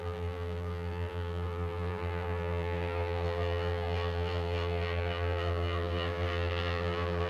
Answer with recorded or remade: remade